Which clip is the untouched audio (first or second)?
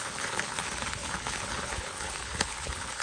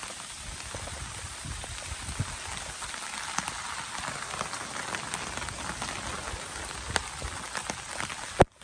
second